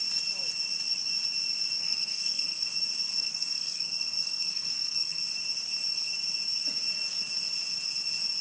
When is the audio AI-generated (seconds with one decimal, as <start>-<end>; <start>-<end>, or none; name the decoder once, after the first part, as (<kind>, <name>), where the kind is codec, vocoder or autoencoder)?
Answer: 1.8-2.6 (codec, SNAC); 3.2-5.2